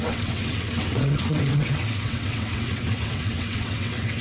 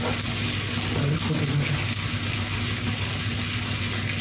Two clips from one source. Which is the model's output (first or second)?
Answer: first